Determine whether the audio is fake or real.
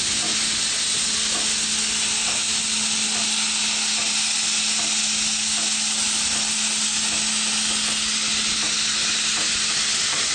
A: real